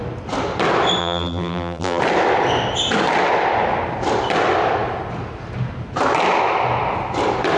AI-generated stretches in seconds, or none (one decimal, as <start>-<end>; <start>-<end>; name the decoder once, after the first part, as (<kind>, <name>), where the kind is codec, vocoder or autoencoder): 1.0-2.0 (vocoder, BigVGAN v2)